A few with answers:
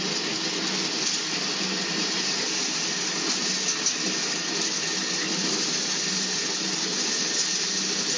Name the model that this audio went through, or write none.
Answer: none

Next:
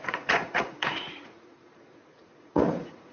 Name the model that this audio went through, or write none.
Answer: vocoder, Vocos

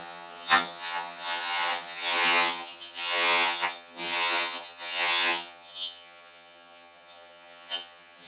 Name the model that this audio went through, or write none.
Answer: vocoder, HiFi-GAN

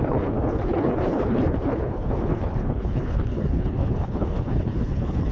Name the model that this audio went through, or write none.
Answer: codec, HILCodec